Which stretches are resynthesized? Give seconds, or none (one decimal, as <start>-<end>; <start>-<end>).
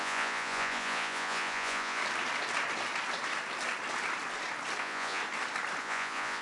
0.0-2.0; 4.8-5.2; 5.8-6.4